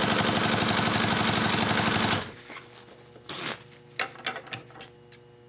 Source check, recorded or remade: recorded